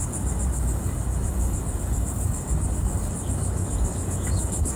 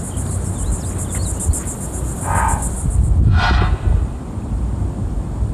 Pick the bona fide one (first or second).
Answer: second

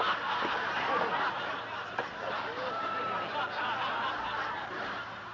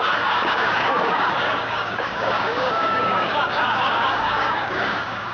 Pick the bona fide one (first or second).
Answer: first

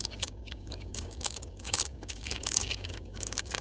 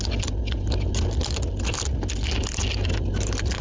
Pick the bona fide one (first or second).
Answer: second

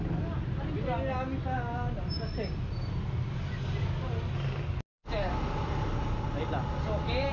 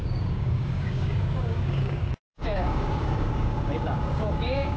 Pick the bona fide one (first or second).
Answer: first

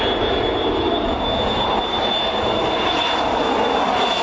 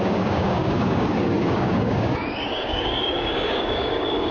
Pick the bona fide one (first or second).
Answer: first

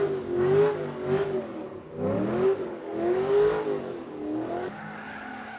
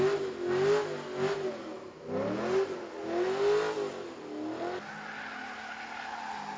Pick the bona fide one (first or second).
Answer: second